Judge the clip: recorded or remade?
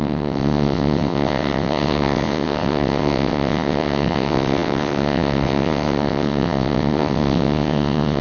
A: remade